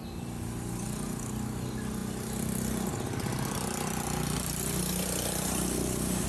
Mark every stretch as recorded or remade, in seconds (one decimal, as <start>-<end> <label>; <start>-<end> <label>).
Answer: 0.0-6.3 recorded

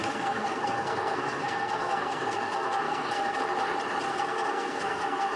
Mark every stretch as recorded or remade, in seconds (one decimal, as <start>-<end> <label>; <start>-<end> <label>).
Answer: 0.0-3.4 remade; 3.4-4.1 recorded; 4.1-5.4 remade

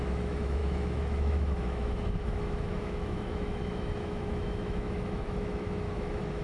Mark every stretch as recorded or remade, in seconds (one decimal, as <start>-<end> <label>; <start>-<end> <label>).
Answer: 0.0-6.4 remade